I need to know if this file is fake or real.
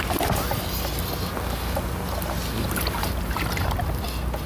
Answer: real